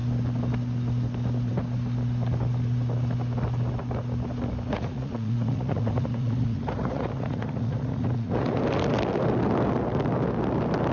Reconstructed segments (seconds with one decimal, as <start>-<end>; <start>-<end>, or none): 4.7-8.6